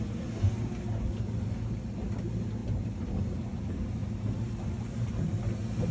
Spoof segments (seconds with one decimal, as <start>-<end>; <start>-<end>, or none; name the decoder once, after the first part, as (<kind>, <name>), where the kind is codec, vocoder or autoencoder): 2.6-3.2 (vocoder, BigVGAN v2); 4.0-5.4